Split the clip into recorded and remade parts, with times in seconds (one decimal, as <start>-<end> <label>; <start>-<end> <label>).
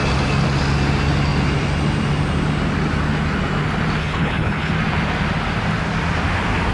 0.0-4.0 recorded; 4.0-4.7 remade; 4.7-6.7 recorded